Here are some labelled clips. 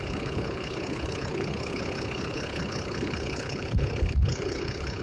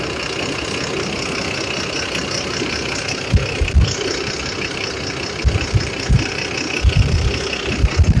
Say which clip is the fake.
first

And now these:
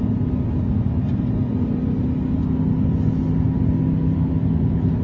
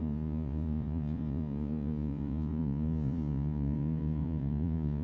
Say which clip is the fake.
second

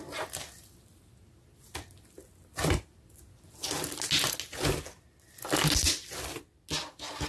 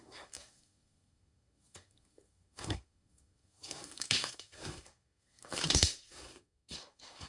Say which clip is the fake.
second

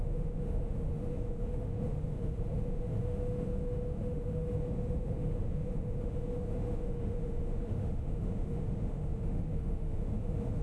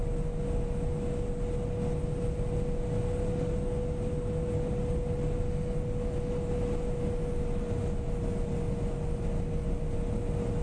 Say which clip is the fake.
first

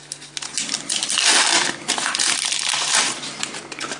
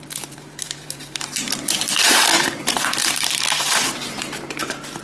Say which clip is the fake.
second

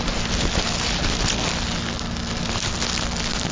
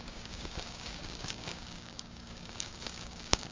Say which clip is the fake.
second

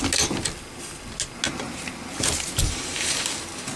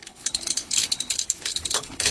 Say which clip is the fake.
second